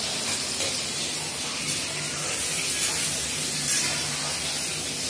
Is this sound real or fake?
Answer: real